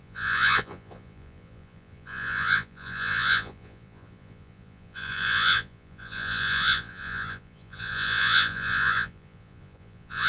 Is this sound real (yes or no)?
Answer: no